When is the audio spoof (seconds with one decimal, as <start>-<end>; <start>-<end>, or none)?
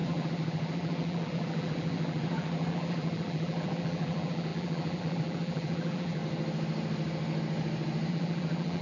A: 0.0-6.2; 8.1-8.8